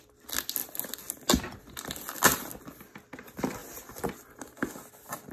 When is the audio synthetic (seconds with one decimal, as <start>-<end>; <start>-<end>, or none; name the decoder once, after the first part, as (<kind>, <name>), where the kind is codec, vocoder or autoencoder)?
none